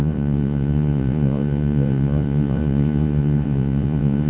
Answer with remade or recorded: remade